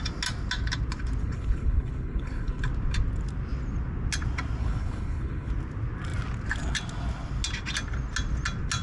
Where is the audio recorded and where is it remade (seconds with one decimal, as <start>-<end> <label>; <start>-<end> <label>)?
0.0-1.2 recorded; 1.2-2.6 remade; 2.6-4.6 recorded; 4.6-5.5 remade; 5.5-8.8 recorded